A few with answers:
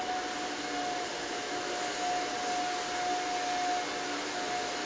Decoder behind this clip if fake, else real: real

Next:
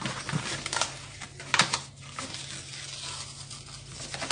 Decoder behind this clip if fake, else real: real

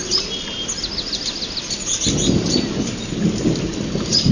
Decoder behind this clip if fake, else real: real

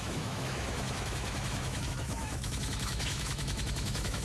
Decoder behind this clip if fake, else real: fake, autoencoder, DAC-VAE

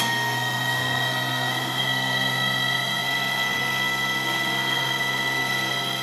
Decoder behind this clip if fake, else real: fake, codec, SNAC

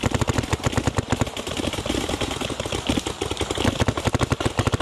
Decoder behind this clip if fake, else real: real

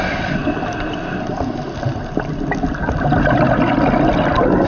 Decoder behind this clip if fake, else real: real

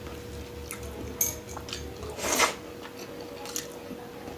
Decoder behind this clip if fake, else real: real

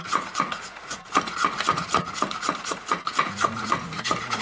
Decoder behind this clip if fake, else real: fake, vocoder, Vocos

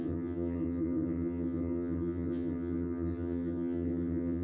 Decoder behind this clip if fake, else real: fake, vocoder, HiFi-GAN